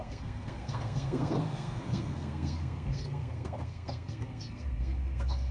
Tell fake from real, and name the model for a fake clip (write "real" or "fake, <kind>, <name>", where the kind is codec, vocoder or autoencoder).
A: fake, codec, SNAC